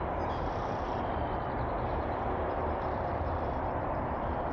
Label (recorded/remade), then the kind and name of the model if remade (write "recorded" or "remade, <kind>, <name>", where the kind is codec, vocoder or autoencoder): remade, vocoder, BigVGAN v2